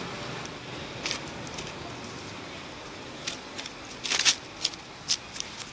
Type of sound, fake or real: real